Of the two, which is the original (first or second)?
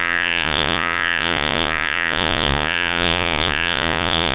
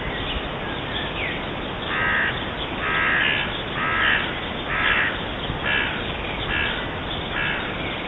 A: second